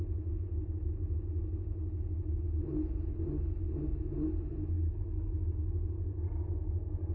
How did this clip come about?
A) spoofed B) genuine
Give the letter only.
B